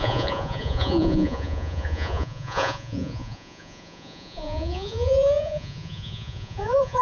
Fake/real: fake